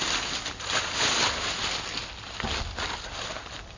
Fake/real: real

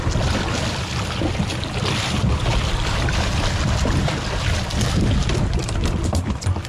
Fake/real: real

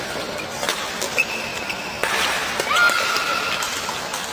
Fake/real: real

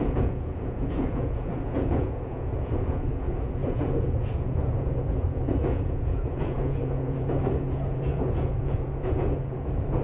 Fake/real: fake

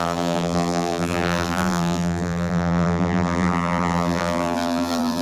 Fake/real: fake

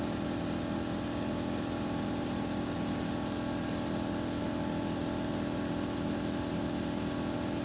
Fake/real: real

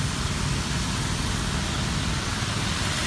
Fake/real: real